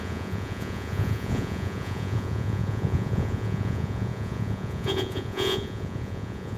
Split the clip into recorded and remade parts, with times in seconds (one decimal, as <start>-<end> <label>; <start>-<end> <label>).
0.0-6.6 remade